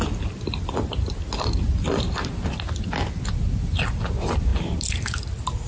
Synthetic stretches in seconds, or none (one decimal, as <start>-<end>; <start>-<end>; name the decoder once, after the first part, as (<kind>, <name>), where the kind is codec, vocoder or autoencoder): none